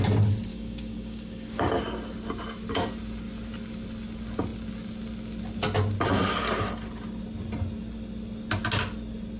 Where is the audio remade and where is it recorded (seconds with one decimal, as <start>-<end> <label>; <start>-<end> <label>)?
0.0-0.5 recorded; 0.5-1.8 remade; 1.8-9.4 recorded